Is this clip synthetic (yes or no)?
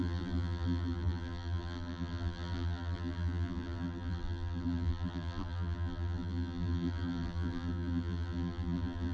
yes